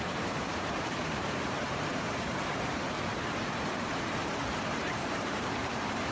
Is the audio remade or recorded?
remade